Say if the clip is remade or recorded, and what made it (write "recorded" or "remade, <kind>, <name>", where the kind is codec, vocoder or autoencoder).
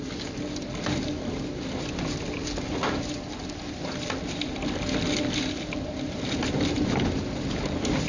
recorded